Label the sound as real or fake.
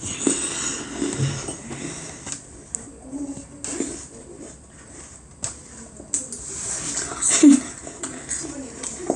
real